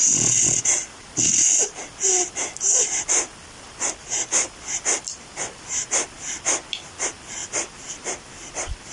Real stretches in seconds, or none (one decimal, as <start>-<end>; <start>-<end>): 0.0-8.9